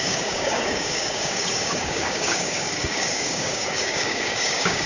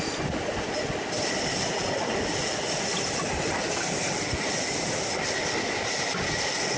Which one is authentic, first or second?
second